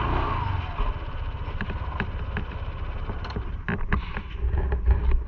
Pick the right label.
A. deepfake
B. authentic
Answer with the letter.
B